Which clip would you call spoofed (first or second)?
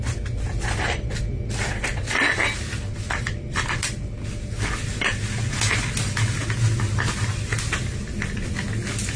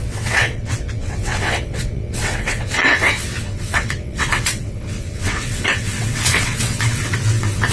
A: second